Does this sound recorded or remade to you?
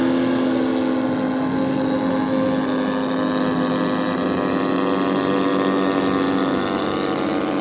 recorded